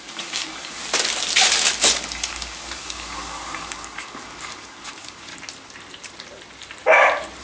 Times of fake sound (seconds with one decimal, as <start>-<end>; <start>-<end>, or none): 0.0-0.8; 1.8-5.3